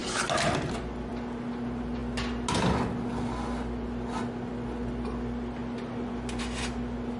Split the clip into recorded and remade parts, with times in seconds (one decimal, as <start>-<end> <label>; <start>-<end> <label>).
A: 0.0-7.2 recorded